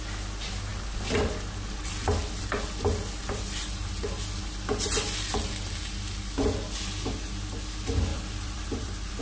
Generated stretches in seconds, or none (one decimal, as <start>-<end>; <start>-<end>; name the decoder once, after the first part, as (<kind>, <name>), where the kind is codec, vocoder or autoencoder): 8.1-9.2 (vocoder, BigVGAN v2)